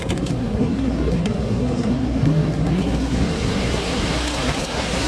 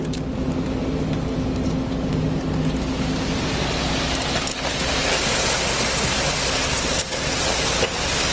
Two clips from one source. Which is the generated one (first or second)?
first